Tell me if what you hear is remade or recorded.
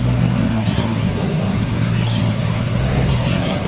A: remade